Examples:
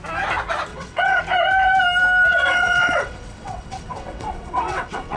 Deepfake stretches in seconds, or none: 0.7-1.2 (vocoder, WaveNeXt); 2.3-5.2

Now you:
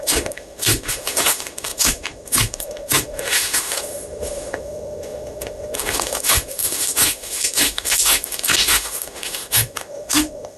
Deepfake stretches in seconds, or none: 0.0-10.6 (autoencoder, DAC-VAE)

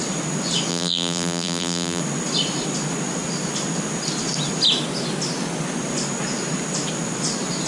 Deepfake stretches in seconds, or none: 0.7-2.0 (vocoder, BigVGAN v2)

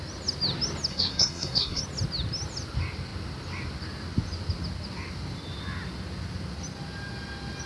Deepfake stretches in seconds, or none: 0.9-1.8 (codec, SNAC)